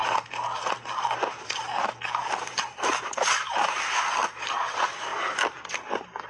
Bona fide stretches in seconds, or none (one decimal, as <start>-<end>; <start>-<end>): 0.0-2.6; 5.1-6.3